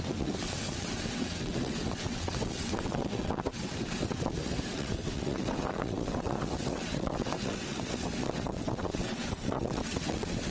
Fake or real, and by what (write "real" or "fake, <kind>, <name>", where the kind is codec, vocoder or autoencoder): fake, vocoder, WaveNeXt